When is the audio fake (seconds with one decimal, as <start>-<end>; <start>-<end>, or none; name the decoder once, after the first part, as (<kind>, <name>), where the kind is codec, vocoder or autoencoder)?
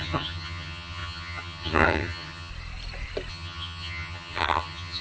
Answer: 0.0-2.5 (vocoder, HiFi-GAN); 3.3-5.0